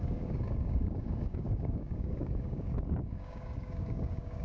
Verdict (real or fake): fake